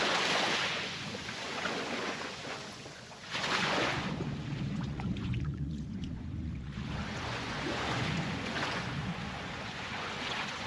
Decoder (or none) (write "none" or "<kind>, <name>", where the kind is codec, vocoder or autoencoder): vocoder, Vocos